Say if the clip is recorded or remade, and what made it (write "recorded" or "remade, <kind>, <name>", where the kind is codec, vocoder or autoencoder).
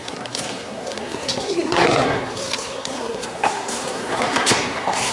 remade, codec, SNAC